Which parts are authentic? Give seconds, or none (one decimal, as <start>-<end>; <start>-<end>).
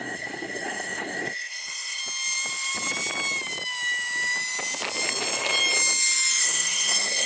2.0-6.4